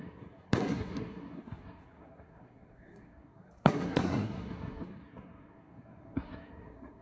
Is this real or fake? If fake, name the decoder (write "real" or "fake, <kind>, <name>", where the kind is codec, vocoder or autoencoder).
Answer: fake, codec, SNAC